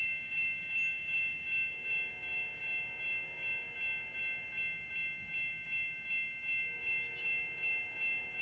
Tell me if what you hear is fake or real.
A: real